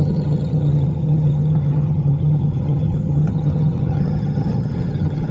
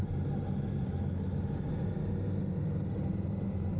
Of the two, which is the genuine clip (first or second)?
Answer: second